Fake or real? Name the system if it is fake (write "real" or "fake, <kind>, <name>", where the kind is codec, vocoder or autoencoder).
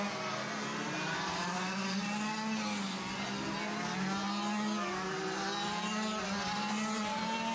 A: real